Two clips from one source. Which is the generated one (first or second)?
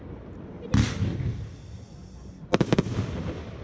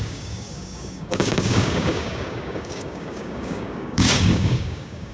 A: second